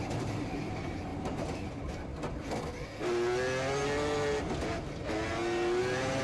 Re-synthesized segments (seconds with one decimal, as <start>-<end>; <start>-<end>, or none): 0.0-2.1; 5.8-6.2